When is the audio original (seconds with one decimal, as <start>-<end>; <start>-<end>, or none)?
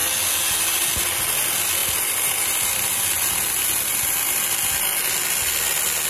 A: 0.0-6.1